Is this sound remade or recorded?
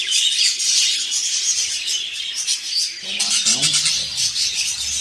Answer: recorded